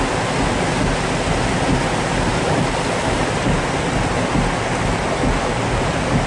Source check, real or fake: real